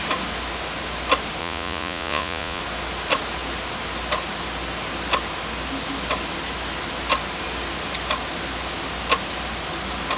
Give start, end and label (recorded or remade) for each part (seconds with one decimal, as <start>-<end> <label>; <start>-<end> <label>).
0.0-1.4 recorded; 1.4-2.6 remade; 2.6-10.2 recorded